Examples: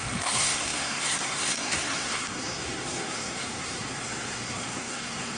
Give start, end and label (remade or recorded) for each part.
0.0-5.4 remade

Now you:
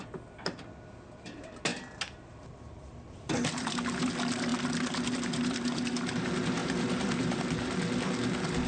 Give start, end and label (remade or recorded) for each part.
0.0-1.7 recorded; 1.7-4.1 remade; 4.1-6.6 recorded; 6.6-7.4 remade; 7.4-8.7 recorded

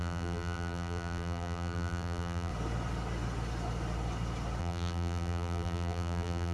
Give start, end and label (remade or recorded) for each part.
0.0-2.5 remade; 2.5-4.6 recorded; 4.6-6.5 remade